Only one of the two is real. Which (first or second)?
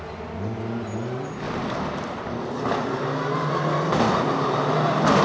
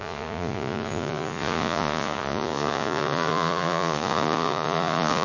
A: first